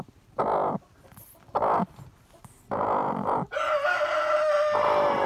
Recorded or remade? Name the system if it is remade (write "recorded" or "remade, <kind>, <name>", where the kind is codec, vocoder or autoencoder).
recorded